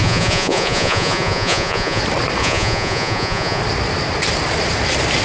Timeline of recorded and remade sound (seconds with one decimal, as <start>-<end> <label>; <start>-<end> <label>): 0.0-2.0 remade; 2.0-2.4 recorded; 2.4-3.6 remade; 3.6-5.2 recorded